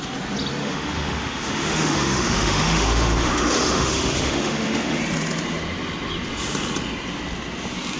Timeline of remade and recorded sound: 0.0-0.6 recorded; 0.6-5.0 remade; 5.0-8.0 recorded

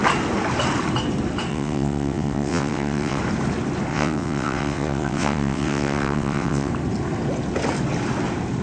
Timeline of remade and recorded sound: 0.0-1.5 recorded; 1.5-3.2 remade; 3.2-3.9 recorded; 3.9-6.7 remade; 6.7-8.6 recorded

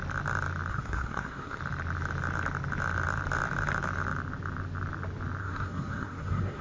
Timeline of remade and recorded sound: 0.0-0.7 recorded; 0.7-1.6 remade; 1.6-5.4 recorded; 5.4-6.6 remade

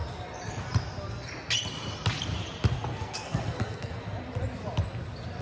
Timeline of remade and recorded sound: 0.0-2.9 recorded; 2.9-4.0 remade; 4.0-5.4 recorded